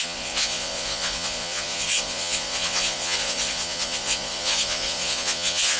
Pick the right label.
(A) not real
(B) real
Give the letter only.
A